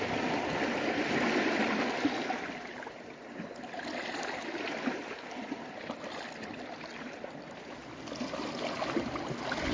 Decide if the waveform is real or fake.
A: real